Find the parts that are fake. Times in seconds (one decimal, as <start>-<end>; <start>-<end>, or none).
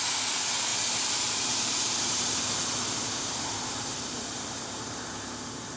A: 0.7-2.4; 3.0-5.8